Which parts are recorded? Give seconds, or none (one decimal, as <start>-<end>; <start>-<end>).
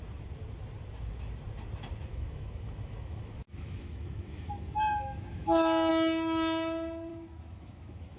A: 0.0-2.1; 5.9-7.1